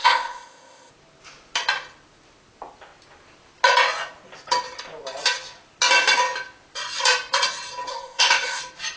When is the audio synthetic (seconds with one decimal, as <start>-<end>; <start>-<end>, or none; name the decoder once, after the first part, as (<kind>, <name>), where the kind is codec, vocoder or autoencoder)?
0.0-0.9 (codec, ZipCodec); 7.9-8.6